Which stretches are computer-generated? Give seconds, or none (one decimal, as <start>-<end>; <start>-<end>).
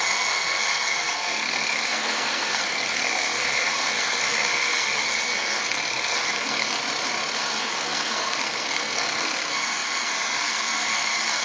0.0-6.8; 7.6-11.4